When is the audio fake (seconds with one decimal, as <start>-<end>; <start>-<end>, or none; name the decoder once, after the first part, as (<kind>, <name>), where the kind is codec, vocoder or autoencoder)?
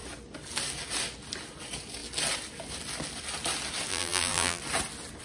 3.9-4.6 (vocoder, BigVGAN v2)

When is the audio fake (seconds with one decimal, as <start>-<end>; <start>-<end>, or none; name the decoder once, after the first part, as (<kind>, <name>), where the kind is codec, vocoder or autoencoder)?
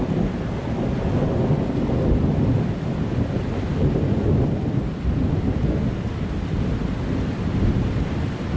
none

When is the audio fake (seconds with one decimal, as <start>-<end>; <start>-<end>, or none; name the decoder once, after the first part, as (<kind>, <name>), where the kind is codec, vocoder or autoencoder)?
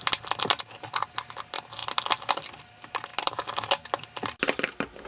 none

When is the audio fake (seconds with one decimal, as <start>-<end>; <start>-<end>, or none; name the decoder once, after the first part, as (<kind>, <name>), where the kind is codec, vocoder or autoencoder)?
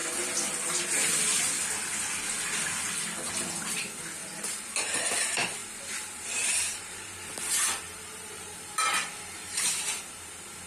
4.2-5.1 (vocoder, BigVGAN v2); 5.6-9.7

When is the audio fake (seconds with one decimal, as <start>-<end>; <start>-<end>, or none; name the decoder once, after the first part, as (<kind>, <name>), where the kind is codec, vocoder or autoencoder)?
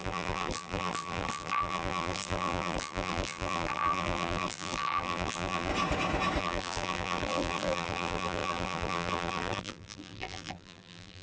0.0-5.7 (vocoder, BigVGAN v2); 6.4-11.2